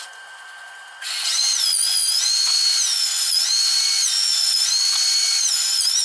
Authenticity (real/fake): fake